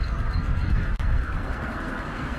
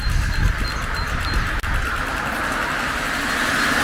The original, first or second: second